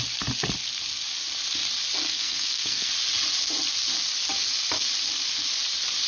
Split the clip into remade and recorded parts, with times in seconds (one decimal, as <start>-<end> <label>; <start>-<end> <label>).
0.0-2.1 recorded; 2.1-2.9 remade; 2.9-6.1 recorded